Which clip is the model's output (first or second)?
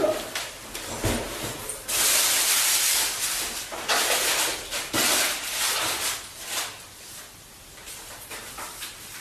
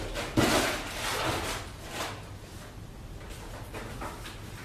first